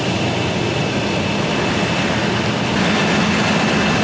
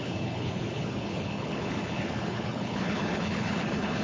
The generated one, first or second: second